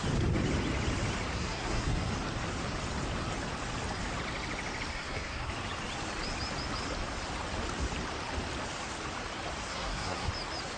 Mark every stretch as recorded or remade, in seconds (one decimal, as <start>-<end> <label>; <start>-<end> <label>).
0.0-1.3 recorded; 1.3-2.1 remade; 2.1-4.9 recorded; 4.9-5.5 remade; 5.5-9.7 recorded; 9.7-10.3 remade; 10.3-10.8 recorded